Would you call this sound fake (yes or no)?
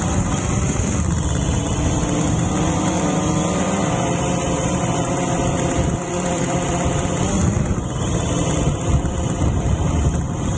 yes